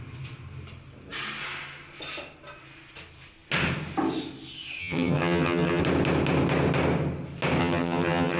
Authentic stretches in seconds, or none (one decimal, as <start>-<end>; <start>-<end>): 0.0-4.8; 5.8-7.6